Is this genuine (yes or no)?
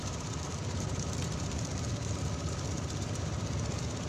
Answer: no